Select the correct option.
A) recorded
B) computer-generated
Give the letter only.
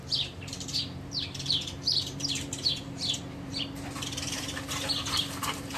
B